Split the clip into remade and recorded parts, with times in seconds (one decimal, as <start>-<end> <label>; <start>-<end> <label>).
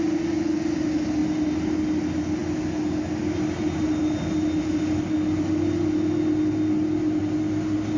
0.0-8.0 recorded